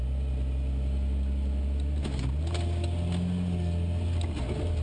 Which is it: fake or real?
real